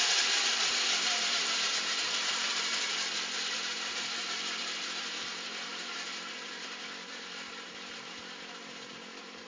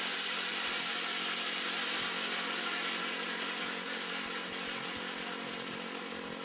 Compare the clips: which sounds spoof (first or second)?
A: first